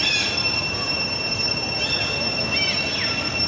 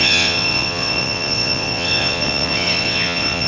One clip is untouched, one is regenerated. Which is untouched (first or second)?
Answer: first